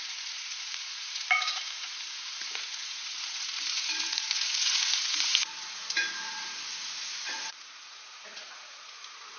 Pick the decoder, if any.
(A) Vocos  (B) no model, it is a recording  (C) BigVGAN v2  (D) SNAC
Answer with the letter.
A